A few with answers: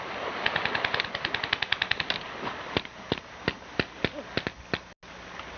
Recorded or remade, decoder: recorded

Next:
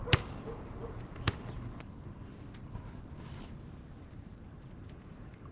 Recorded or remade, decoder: recorded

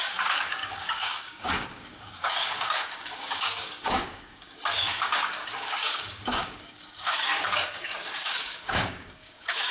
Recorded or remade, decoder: remade, codec, DAC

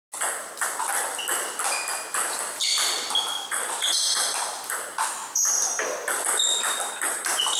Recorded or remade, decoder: recorded